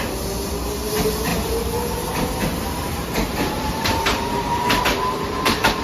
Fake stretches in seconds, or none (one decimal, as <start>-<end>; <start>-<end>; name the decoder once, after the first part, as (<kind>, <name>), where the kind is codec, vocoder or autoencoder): 1.3-4.8 (vocoder, BigVGAN v2)